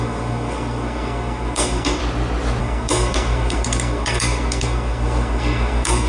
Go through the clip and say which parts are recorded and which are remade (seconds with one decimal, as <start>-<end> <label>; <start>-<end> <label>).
0.0-2.0 remade; 2.0-2.6 recorded; 2.6-6.1 remade